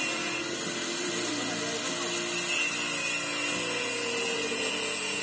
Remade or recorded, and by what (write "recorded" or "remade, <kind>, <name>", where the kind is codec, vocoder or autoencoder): recorded